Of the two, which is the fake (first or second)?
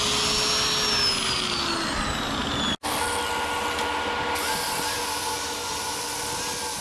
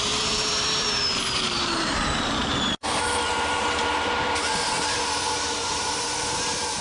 second